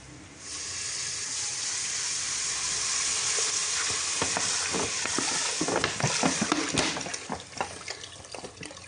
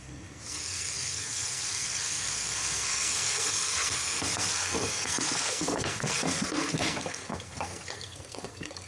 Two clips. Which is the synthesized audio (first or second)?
second